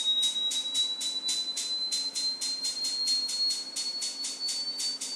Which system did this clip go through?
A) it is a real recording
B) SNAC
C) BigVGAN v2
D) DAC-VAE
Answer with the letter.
A